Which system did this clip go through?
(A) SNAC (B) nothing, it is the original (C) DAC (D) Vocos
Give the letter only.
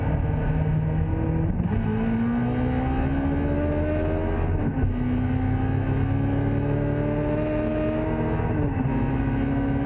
B